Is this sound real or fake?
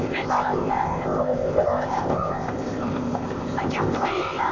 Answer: fake